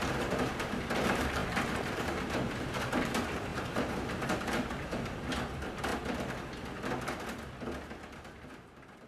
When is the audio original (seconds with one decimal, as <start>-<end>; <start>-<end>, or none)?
5.9-8.4